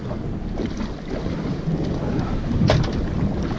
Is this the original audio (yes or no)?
yes